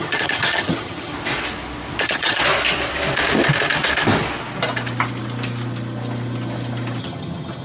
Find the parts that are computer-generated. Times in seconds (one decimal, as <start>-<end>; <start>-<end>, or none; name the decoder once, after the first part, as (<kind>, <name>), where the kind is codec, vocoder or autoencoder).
0.0-1.1 (vocoder, HiFi-GAN); 2.0-2.4; 7.0-7.6